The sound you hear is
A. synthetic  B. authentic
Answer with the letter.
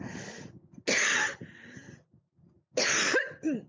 B